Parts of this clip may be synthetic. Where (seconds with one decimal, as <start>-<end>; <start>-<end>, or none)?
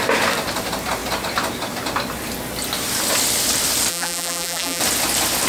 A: 3.9-4.8